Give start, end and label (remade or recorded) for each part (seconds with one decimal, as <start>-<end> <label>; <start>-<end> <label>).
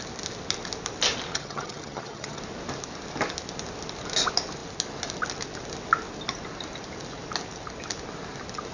0.0-1.3 recorded; 1.3-2.4 remade; 2.4-8.7 recorded